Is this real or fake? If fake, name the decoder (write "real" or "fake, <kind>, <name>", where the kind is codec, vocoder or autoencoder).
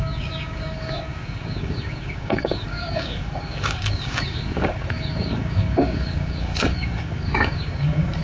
fake, codec, DAC